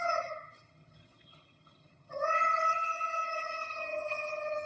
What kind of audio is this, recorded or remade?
remade